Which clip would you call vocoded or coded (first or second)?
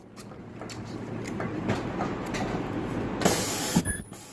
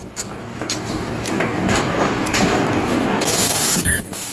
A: second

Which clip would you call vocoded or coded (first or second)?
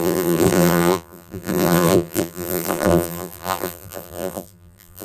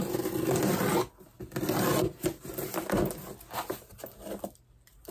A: first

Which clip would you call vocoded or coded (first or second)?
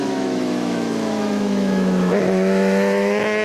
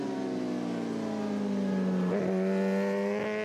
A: first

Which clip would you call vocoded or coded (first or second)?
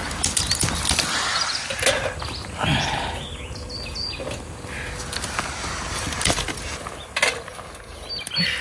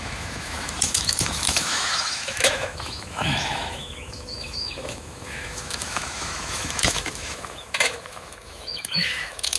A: second